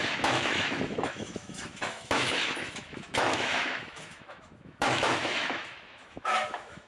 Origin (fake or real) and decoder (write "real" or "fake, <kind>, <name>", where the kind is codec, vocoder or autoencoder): fake, autoencoder, DAC-VAE